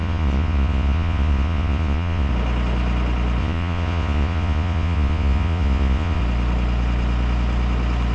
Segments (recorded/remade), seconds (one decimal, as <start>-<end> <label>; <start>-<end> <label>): 0.0-2.3 remade; 2.3-3.4 recorded; 3.4-6.2 remade; 6.2-8.1 recorded